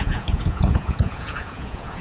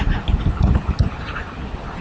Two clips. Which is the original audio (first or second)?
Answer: second